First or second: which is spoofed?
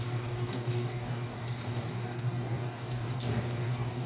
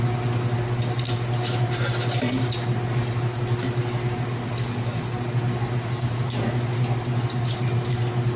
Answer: first